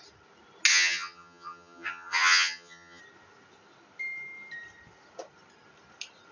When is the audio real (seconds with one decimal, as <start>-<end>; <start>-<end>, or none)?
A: 0.0-0.7; 3.0-6.3